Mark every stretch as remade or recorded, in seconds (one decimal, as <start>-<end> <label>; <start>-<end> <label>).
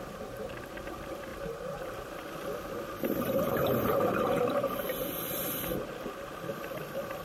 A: 0.0-7.2 remade